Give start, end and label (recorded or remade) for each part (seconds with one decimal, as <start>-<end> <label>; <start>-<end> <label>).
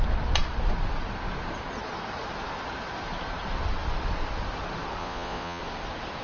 0.0-5.0 recorded; 5.0-5.6 remade; 5.6-6.2 recorded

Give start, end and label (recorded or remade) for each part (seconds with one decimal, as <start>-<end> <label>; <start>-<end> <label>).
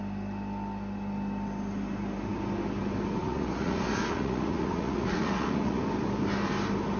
0.0-3.2 recorded; 3.2-5.8 remade; 5.8-7.0 recorded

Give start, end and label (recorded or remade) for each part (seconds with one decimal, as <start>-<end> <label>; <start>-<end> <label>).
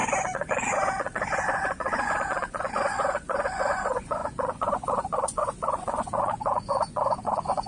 0.0-7.7 remade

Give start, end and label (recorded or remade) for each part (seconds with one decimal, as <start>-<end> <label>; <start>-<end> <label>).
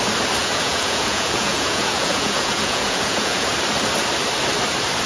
0.0-0.4 recorded; 0.4-3.5 remade; 3.5-5.1 recorded